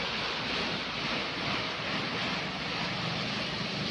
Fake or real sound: real